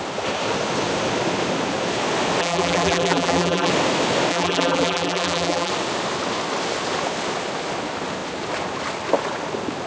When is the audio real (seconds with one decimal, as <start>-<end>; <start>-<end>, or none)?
0.0-2.4; 3.7-4.3; 5.7-9.9

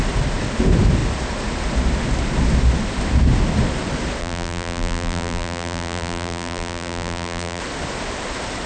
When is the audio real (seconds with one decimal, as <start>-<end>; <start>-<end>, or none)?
0.0-4.2; 7.6-8.7

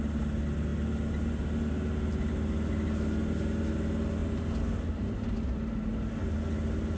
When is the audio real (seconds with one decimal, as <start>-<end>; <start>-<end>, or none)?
0.0-7.0

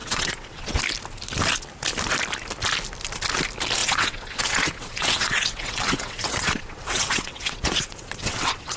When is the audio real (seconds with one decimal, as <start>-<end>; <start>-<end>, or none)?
0.8-3.8

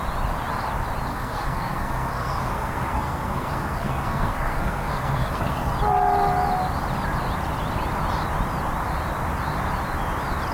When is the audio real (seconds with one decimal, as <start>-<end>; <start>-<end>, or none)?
0.0-1.1; 5.7-10.5